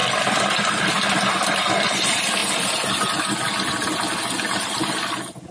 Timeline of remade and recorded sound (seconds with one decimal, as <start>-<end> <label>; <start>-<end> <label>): 0.0-5.5 recorded

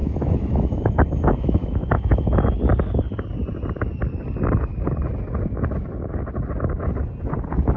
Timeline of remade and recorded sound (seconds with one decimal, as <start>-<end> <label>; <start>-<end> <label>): 0.0-2.5 remade; 2.5-7.8 recorded

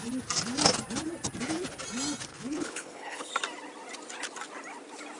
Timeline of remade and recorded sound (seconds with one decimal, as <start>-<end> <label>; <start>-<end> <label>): 0.0-2.3 recorded; 2.3-3.3 remade; 3.3-5.2 recorded

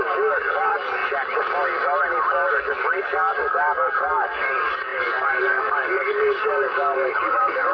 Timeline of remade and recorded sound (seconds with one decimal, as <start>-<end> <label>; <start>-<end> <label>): 0.0-1.0 remade; 1.0-2.5 recorded; 2.5-7.7 remade

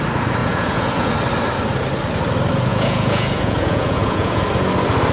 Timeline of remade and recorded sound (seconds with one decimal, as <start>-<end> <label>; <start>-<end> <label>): 0.0-0.4 recorded; 0.4-1.1 remade; 1.1-2.7 recorded; 2.7-4.4 remade; 4.4-5.1 recorded

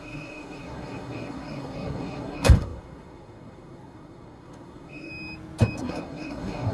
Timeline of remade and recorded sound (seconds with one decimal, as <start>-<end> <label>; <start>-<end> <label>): 0.0-5.1 remade; 5.1-5.8 recorded; 5.8-6.7 remade

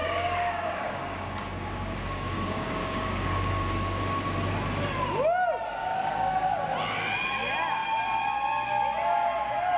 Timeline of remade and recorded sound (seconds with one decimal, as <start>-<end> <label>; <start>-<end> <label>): 0.0-4.0 remade; 4.0-5.8 recorded; 5.8-6.6 remade; 6.6-9.8 recorded

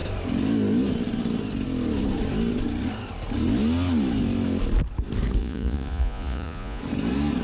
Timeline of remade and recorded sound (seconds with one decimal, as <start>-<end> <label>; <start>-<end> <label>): 0.0-5.4 recorded; 5.4-6.8 remade; 6.8-7.4 recorded